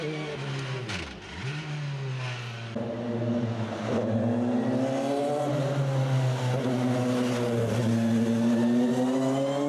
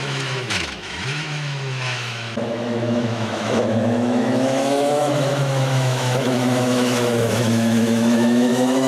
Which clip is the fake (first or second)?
second